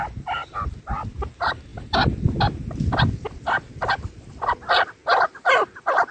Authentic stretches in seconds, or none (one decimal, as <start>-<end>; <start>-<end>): 0.0-6.1